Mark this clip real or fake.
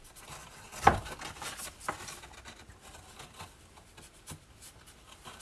real